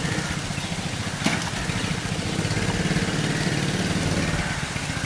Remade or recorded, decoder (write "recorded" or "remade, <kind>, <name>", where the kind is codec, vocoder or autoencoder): recorded